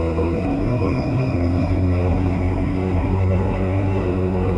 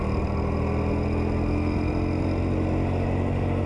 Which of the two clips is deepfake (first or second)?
first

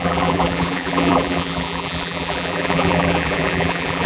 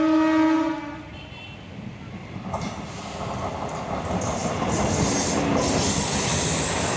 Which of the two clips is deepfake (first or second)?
first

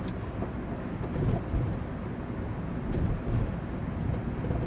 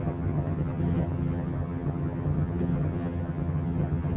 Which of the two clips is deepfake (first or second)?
second